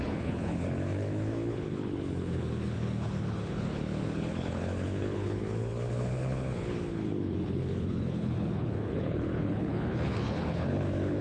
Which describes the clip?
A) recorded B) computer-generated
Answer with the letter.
B